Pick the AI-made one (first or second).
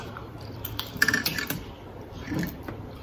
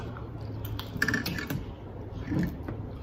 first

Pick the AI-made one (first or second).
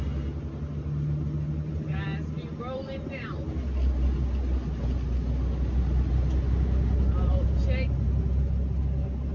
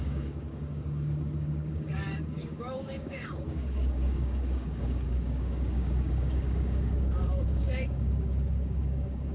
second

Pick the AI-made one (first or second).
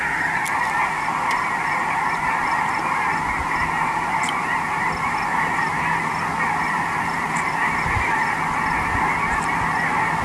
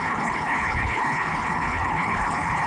second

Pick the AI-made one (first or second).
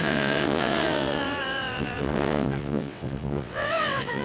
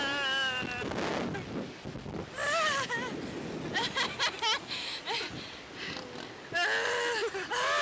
first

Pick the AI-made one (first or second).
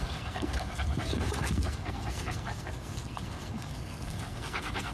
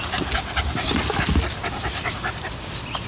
first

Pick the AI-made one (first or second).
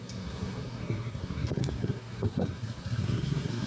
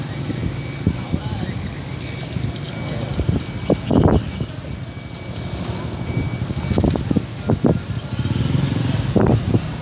first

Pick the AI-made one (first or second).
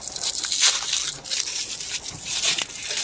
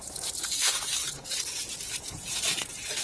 second